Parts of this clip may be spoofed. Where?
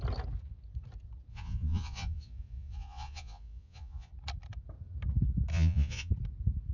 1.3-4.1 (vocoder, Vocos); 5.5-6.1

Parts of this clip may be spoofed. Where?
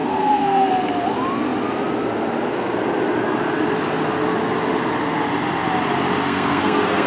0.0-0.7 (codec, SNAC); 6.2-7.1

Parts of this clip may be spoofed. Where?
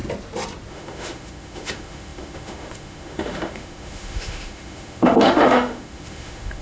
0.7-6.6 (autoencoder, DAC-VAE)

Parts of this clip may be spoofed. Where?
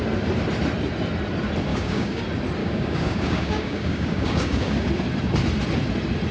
1.7-2.2 (codec, DAC); 2.6-4.9